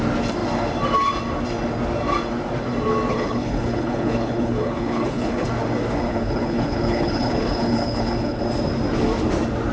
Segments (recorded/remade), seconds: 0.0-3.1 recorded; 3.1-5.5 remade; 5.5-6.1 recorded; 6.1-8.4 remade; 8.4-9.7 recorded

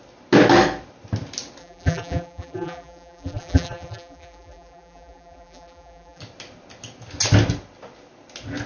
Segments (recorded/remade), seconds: 0.0-1.6 recorded; 1.6-6.2 remade; 6.2-8.7 recorded

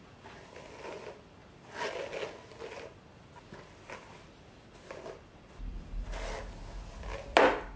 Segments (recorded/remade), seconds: 0.0-7.8 recorded

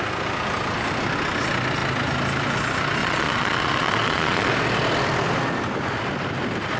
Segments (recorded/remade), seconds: 0.0-3.0 recorded; 3.0-4.5 remade; 4.5-6.8 recorded

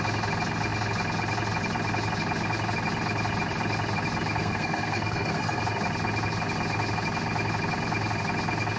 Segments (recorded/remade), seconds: 0.0-4.4 recorded; 4.4-5.6 remade; 5.6-8.8 recorded

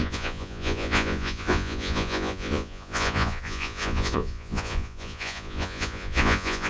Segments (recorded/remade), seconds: 0.0-6.7 remade

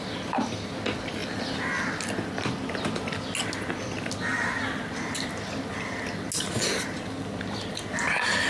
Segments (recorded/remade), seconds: 0.0-8.5 recorded

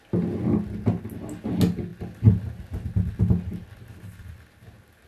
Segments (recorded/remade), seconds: 0.0-5.1 recorded